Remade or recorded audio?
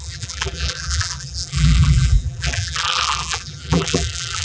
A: remade